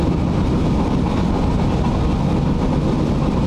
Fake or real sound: real